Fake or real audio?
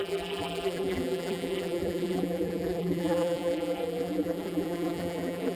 fake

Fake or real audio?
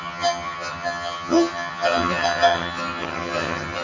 fake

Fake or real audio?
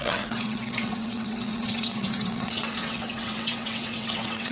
fake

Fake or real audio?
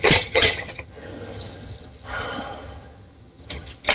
fake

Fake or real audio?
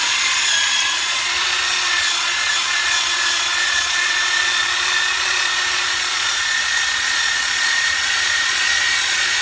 fake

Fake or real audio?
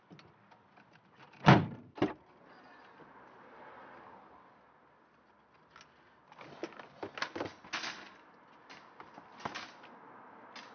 real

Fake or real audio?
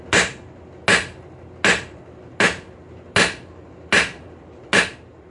real